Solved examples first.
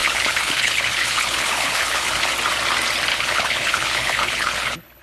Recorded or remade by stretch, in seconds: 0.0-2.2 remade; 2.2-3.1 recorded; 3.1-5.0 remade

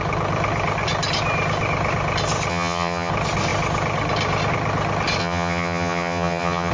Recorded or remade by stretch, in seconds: 0.0-2.5 recorded; 2.5-3.1 remade; 3.1-5.2 recorded; 5.2-6.7 remade

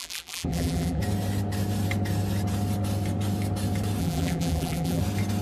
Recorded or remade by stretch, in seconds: 0.0-1.0 remade; 1.0-4.0 recorded; 4.0-5.0 remade; 5.0-5.4 recorded

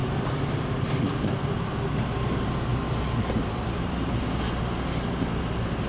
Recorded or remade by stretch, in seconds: 0.0-1.8 remade; 1.8-2.7 recorded; 2.7-4.2 remade; 4.2-5.9 recorded

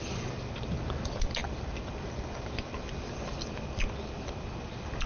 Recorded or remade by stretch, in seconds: 0.0-5.1 recorded

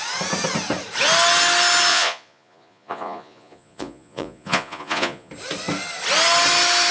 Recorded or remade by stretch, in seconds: 0.0-1.9 recorded; 1.9-5.3 remade; 5.3-6.9 recorded

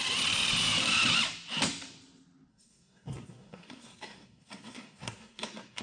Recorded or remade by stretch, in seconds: 0.0-2.5 recorded; 2.5-5.8 remade